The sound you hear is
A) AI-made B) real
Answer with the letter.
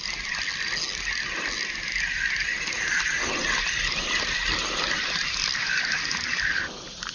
B